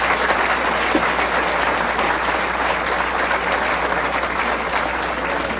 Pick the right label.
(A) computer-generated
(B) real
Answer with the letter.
B